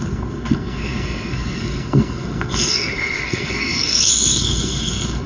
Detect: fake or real fake